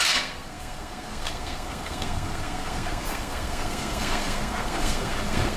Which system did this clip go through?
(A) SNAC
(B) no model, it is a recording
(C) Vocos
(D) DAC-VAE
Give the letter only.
A